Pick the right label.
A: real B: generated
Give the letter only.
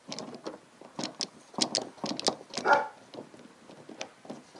A